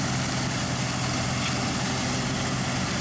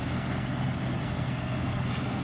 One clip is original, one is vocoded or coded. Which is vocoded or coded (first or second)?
second